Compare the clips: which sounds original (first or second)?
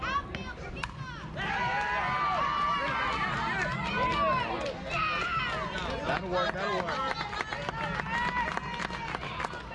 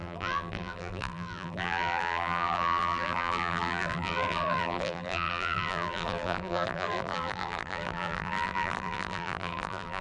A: first